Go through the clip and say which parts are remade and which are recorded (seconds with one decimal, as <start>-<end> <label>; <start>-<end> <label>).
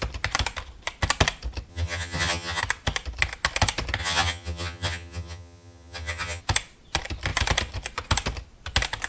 0.0-1.7 recorded; 1.7-2.6 remade; 2.6-4.0 recorded; 4.0-6.4 remade; 6.4-9.1 recorded